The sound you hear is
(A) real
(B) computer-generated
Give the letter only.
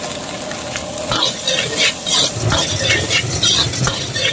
A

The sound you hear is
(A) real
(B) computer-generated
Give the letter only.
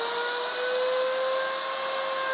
A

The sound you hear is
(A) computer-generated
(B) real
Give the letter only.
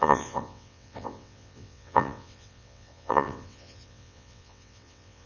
A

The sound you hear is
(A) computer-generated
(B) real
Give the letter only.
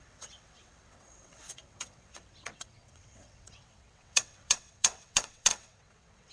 A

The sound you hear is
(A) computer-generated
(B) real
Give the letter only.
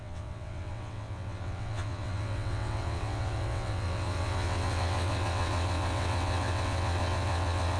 A